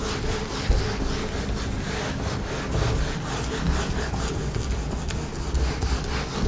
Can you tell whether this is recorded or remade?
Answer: recorded